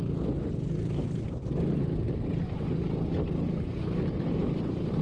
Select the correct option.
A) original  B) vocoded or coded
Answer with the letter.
A